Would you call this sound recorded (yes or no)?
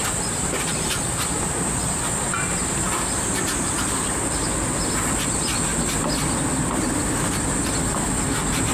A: yes